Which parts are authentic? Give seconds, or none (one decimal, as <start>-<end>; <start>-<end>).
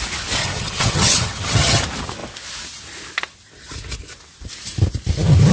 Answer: 0.0-0.4; 1.8-5.5